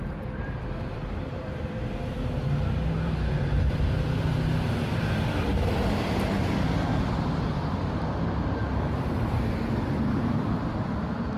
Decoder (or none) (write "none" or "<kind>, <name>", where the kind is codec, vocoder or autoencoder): vocoder, BigVGAN v2